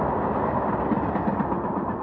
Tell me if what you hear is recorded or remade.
recorded